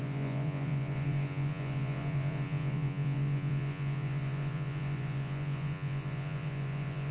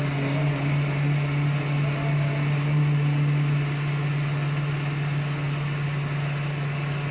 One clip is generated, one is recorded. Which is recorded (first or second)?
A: second